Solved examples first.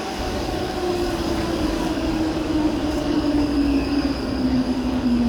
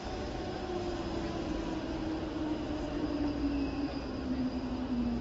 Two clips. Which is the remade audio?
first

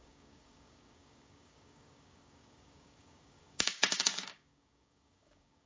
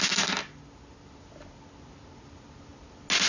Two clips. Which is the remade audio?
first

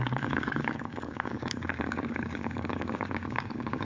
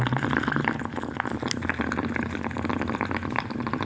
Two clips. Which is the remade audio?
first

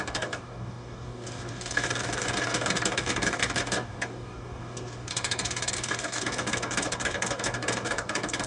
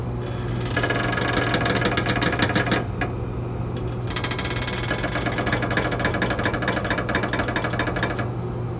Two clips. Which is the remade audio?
first